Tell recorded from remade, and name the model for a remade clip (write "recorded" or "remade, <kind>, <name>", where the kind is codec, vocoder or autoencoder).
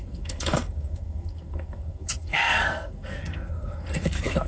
remade, codec, SNAC